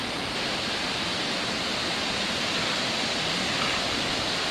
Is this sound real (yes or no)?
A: yes